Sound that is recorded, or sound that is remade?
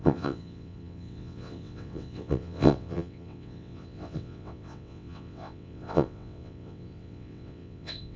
remade